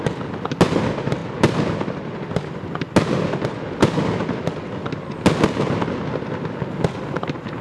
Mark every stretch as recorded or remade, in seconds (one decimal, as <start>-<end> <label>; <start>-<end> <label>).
0.0-7.6 recorded